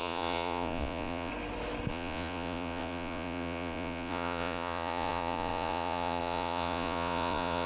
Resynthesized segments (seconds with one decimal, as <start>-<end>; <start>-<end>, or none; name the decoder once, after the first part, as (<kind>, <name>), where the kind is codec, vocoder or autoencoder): 0.0-1.3 (vocoder, Vocos); 1.9-7.7